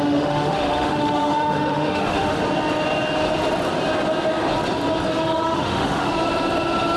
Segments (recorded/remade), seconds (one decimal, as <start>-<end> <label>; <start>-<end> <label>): 0.0-2.4 remade; 2.4-5.1 recorded; 5.1-6.1 remade; 6.1-7.0 recorded